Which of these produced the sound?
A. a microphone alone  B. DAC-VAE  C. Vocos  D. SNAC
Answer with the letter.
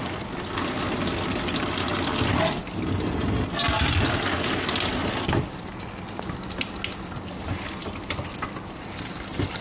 A